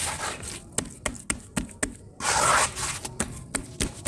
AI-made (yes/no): no